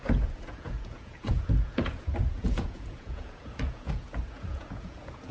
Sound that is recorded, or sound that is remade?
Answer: remade